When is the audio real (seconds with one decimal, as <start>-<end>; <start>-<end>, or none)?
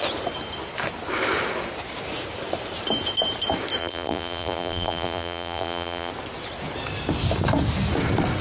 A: 0.0-3.8; 6.1-8.4